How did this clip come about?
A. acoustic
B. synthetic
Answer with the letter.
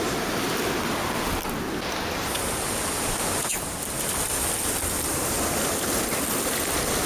A